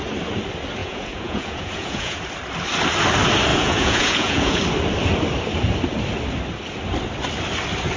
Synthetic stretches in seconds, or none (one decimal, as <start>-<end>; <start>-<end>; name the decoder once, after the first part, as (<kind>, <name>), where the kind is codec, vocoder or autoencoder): 0.8-2.2 (vocoder, Vocos); 3.5-4.6